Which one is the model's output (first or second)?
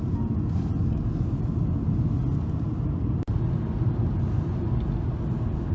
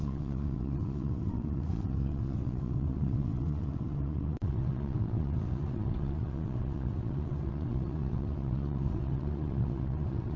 second